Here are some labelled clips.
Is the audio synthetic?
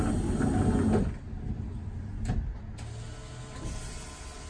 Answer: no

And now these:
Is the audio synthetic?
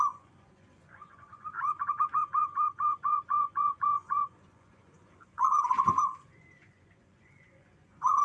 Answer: yes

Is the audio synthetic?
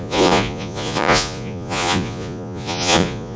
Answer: yes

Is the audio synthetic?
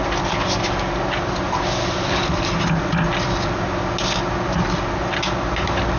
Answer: no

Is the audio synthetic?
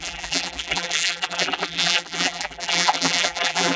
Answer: yes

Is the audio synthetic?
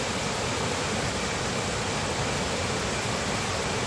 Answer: no